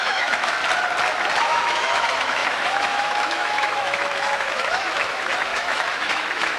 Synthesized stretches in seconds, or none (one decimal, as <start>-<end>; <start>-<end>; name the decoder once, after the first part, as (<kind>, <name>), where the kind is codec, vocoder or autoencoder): 0.0-0.6 (autoencoder, DAC-VAE); 1.4-6.6

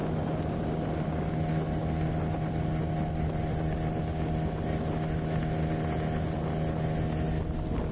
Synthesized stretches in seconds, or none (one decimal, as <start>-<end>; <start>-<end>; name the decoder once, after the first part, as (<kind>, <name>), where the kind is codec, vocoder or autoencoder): none

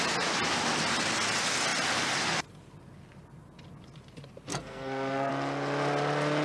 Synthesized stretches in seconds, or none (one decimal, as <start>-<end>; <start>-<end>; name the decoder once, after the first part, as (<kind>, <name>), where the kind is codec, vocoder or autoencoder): 4.5-5.3 (codec, SNAC)

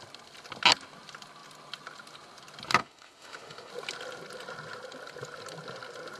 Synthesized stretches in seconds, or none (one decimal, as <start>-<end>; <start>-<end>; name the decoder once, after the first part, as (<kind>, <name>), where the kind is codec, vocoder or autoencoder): 2.8-3.7 (autoencoder, DAC-VAE)

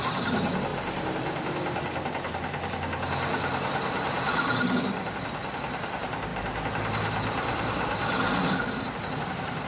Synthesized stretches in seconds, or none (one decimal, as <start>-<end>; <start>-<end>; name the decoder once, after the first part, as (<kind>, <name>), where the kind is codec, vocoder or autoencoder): 6.3-9.7 (vocoder, BigVGAN v2)

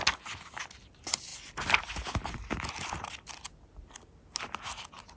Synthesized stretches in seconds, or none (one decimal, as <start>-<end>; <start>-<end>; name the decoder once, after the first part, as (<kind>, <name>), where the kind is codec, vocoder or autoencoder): none